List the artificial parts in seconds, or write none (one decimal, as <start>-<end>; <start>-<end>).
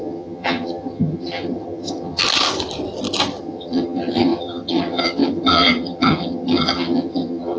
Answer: 0.0-2.2; 3.4-7.6